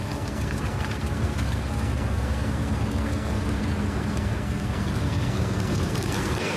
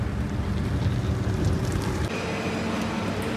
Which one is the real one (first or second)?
second